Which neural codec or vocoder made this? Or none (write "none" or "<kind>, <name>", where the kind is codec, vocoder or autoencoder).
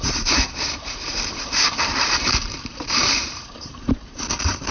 vocoder, BigVGAN v2